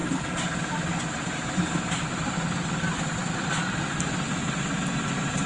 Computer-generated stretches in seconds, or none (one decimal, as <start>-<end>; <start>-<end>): none